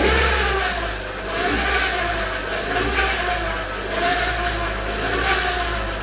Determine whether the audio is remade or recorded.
recorded